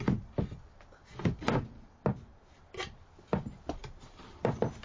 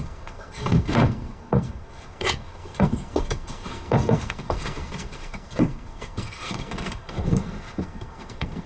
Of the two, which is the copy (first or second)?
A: second